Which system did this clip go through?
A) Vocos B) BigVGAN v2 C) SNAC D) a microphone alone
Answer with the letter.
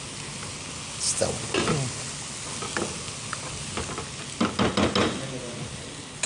D